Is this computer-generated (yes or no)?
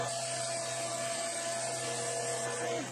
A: no